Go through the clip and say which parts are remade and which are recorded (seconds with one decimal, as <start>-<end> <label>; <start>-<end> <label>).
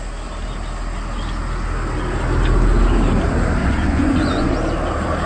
0.0-3.6 recorded; 3.6-4.5 remade; 4.5-5.3 recorded